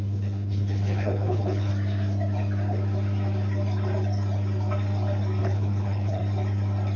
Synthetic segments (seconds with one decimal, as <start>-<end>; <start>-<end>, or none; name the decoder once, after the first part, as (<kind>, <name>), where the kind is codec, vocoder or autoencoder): 0.0-1.7 (codec, HILCodec); 5.4-6.2